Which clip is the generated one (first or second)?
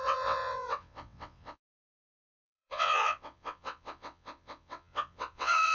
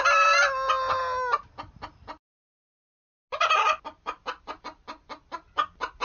first